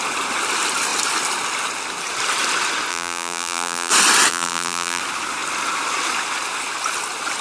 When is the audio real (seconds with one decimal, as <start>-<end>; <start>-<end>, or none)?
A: 0.0-2.9; 3.9-4.3; 5.0-7.4